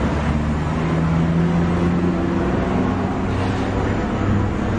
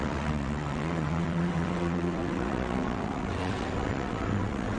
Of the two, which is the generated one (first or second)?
second